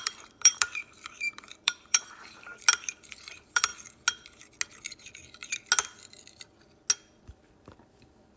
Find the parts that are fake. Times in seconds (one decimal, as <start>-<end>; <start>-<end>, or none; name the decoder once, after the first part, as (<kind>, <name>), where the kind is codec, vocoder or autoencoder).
0.0-2.5 (vocoder, BigVGAN v2); 3.1-3.7; 7.2-8.4